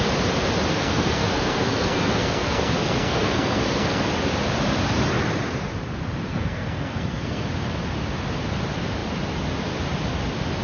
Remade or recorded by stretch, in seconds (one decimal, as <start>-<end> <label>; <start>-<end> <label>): 0.0-0.7 recorded; 0.7-4.1 remade; 4.1-6.3 recorded; 6.3-7.5 remade; 7.5-10.6 recorded